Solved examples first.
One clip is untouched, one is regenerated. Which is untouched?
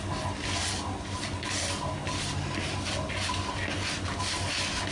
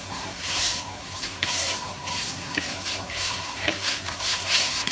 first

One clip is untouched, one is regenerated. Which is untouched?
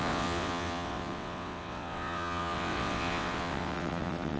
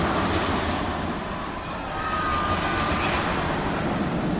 second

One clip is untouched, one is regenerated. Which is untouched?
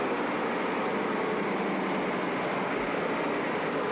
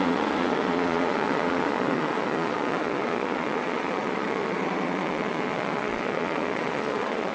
first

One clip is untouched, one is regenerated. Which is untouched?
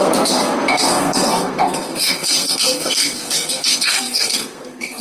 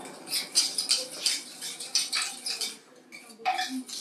second